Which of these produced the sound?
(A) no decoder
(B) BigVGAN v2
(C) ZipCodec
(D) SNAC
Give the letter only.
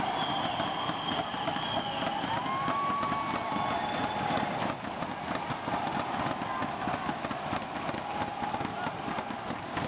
A